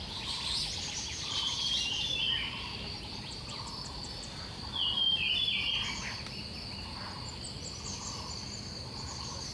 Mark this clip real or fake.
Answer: real